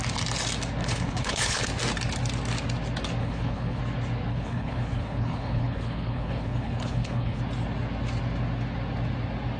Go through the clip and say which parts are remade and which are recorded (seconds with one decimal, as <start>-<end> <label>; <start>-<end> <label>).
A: 0.0-0.8 recorded; 0.8-1.6 remade; 1.6-3.2 recorded; 3.2-3.8 remade; 3.8-4.3 recorded; 4.3-7.4 remade; 7.4-9.6 recorded